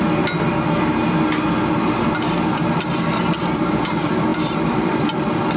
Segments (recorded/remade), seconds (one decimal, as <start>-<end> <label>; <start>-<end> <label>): 0.0-3.4 recorded; 3.4-5.6 remade